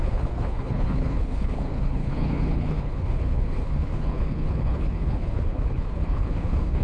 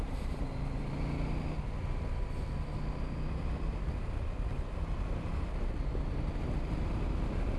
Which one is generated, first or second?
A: first